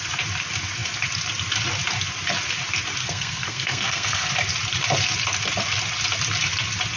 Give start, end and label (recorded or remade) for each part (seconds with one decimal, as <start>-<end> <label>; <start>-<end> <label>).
0.0-3.0 recorded; 3.0-4.3 remade; 4.3-7.0 recorded